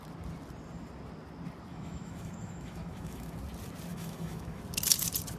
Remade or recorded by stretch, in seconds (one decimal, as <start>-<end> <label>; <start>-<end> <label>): 0.0-1.7 recorded; 1.7-3.3 remade; 3.3-3.9 recorded; 3.9-4.6 remade; 4.6-5.4 recorded